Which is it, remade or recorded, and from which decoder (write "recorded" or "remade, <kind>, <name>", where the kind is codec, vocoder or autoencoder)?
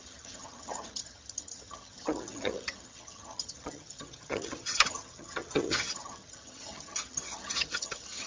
remade, vocoder, HiFi-GAN